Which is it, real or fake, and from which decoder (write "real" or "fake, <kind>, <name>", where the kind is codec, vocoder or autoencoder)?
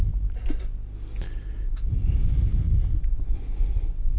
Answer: real